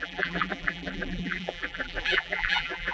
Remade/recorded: remade